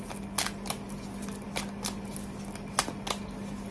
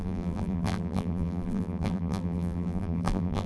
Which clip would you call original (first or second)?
first